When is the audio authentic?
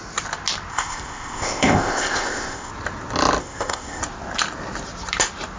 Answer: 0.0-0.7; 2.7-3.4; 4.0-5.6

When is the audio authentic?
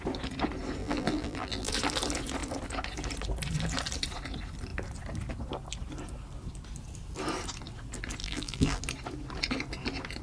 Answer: 0.0-0.8; 1.7-8.2; 8.8-10.2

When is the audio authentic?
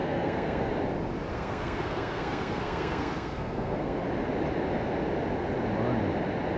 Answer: 0.7-1.3; 4.0-6.6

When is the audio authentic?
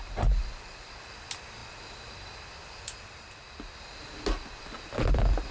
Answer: 0.0-5.5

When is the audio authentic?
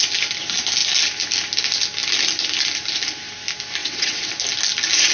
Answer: 0.0-3.8; 4.3-5.1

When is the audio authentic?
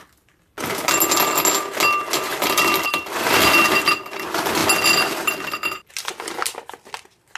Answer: 0.0-2.3; 2.9-7.4